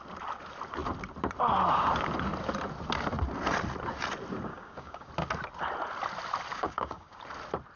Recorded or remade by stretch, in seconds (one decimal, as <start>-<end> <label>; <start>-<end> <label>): 0.0-4.5 recorded; 4.5-5.1 remade; 5.1-6.5 recorded; 6.5-7.2 remade; 7.2-7.8 recorded